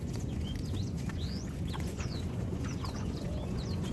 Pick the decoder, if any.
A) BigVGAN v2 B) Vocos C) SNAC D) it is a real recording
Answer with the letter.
B